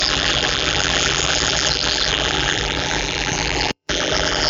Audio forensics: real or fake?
fake